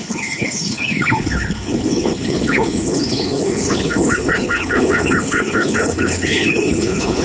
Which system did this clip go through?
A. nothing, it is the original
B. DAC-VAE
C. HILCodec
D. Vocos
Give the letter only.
C